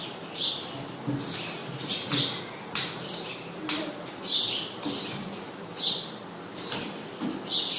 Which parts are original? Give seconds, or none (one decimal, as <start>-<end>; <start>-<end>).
0.0-7.8